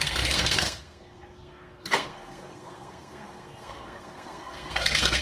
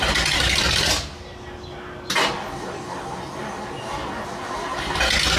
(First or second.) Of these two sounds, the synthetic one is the first